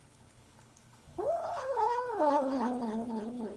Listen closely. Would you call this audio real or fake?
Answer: fake